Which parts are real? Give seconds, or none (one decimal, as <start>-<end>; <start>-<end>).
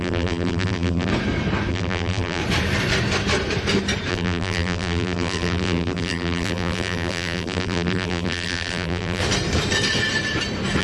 1.1-1.7; 2.4-4.1; 9.2-10.8